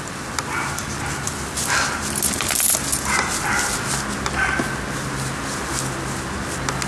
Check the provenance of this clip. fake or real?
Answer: real